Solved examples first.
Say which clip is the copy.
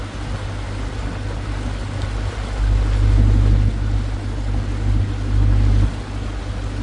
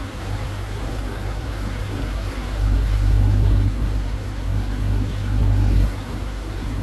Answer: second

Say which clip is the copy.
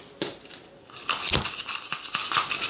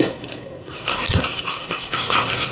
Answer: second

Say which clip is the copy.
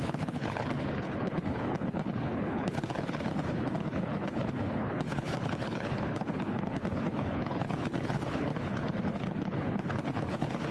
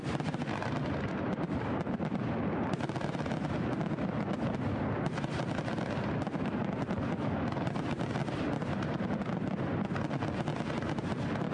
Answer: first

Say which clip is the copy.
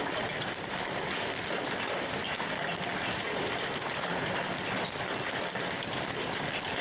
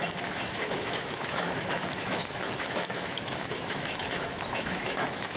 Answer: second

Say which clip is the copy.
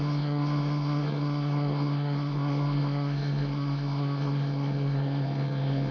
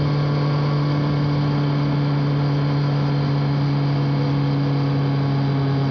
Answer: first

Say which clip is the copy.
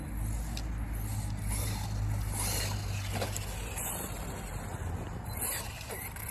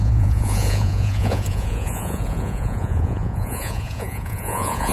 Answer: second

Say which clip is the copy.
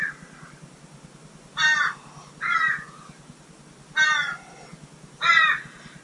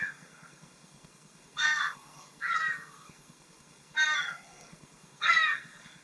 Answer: second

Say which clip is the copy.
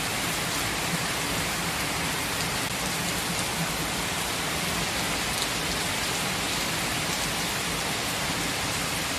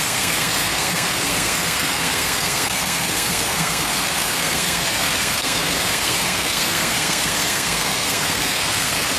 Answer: second